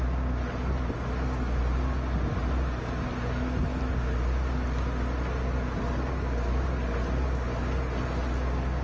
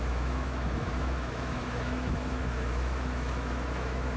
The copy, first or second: second